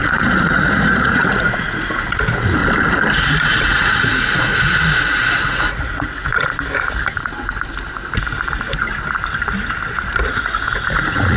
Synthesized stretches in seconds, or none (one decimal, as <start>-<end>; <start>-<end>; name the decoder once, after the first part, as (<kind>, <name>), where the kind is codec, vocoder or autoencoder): 0.0-2.6 (vocoder, Vocos); 3.2-6.5; 10.3-11.4